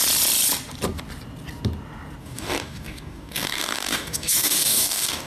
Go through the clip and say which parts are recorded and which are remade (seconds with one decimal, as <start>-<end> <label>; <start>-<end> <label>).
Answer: 0.0-2.2 recorded; 2.2-5.3 remade